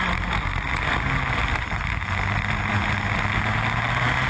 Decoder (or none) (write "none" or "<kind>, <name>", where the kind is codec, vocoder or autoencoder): none